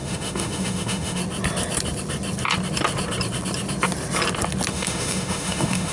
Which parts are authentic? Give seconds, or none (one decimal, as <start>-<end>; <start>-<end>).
1.2-4.7